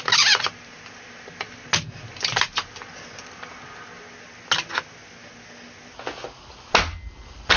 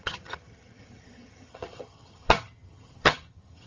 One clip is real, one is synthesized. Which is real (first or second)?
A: first